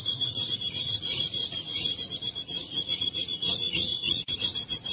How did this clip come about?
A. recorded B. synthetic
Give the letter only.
B